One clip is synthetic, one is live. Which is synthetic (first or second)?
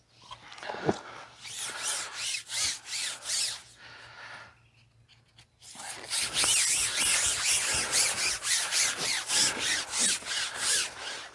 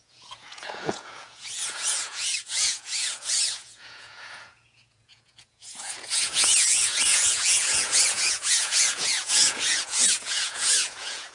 second